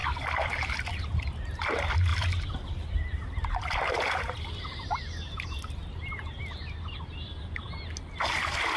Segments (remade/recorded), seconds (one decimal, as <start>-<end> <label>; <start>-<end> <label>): 0.0-2.1 recorded; 2.1-4.6 remade; 4.6-8.8 recorded